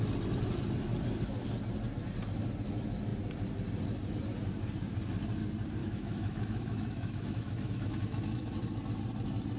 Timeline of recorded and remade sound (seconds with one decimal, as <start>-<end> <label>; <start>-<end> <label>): 0.0-5.8 recorded; 5.8-8.8 remade; 8.8-9.6 recorded